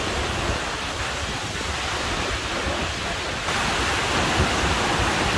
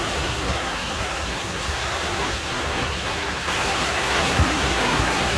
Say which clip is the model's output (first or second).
second